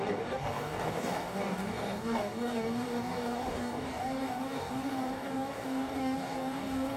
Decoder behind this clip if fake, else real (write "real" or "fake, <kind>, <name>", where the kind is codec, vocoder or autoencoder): fake, codec, DAC